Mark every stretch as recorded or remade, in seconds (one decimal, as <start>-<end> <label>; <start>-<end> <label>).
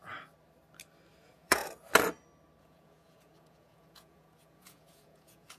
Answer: 0.0-1.2 recorded; 1.2-1.6 remade; 1.6-2.6 recorded; 2.6-5.6 remade